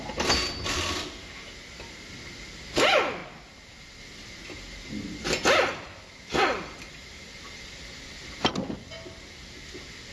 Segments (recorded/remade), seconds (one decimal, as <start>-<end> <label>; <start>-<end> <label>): 0.0-10.1 recorded